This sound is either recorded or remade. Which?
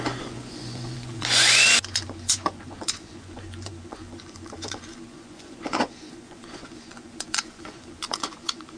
remade